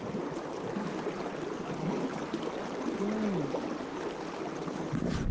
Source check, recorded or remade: recorded